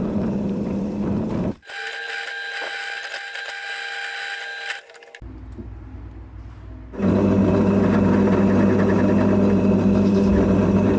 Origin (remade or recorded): recorded